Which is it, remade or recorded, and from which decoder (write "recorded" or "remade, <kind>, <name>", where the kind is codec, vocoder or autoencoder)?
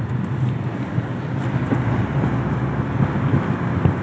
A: recorded